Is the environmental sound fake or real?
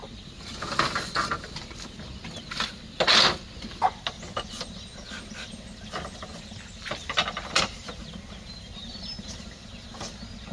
real